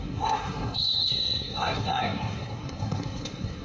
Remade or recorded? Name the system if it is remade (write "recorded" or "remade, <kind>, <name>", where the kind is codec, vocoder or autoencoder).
remade, codec, SNAC